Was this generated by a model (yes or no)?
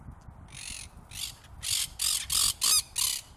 no